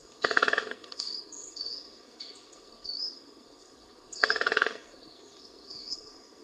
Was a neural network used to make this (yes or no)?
yes